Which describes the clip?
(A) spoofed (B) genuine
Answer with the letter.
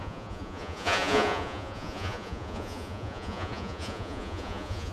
A